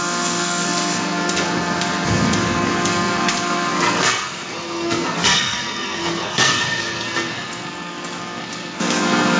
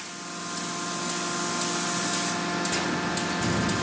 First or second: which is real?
second